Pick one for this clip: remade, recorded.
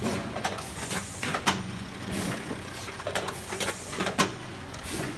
remade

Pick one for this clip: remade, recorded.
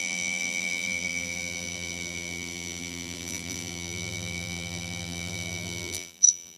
remade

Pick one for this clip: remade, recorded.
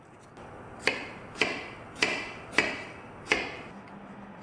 recorded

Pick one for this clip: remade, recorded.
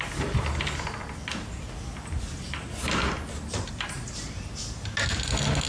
recorded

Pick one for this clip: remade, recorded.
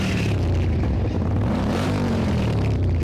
remade